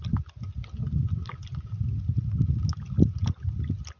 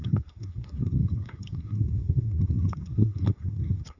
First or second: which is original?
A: first